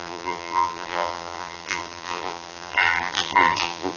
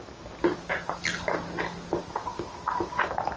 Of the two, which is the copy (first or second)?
first